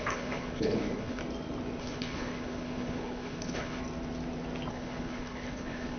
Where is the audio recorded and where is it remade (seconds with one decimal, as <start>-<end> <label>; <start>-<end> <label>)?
0.0-1.2 remade; 1.2-1.8 recorded; 1.8-3.8 remade; 3.8-4.7 recorded; 4.7-6.0 remade

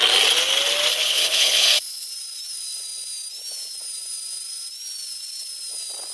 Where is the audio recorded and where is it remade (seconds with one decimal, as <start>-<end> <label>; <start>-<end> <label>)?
0.0-0.9 recorded; 0.9-2.1 remade; 2.1-6.1 recorded

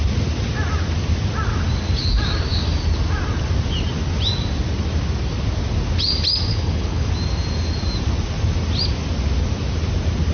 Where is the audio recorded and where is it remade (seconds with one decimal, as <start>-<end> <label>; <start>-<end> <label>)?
0.0-6.5 recorded; 6.5-7.1 remade; 7.1-10.3 recorded